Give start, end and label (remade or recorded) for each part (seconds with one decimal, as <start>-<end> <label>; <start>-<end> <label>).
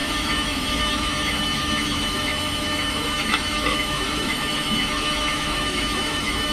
0.0-6.5 remade